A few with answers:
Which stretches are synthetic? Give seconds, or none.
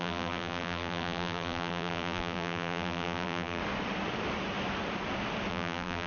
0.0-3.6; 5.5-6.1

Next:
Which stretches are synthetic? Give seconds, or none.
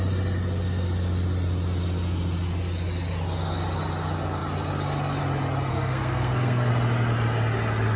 5.7-6.7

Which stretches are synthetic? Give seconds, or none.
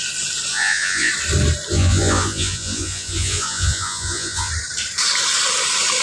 0.5-1.1; 1.7-4.5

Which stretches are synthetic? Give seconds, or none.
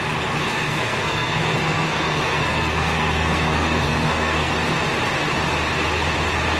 0.5-4.5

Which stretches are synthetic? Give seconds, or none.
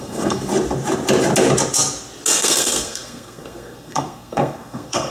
0.0-0.5; 2.3-5.1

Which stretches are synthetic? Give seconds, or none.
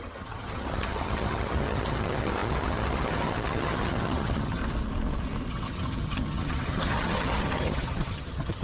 0.0-4.6; 5.5-8.6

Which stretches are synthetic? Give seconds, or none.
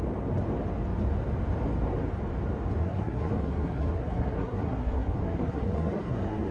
2.8-6.5